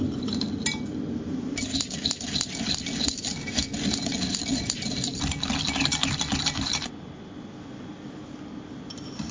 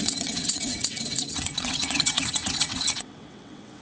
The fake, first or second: second